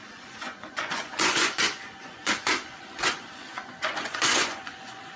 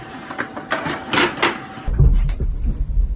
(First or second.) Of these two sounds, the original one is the second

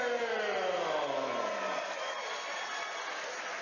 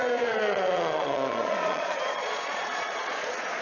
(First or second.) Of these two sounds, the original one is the first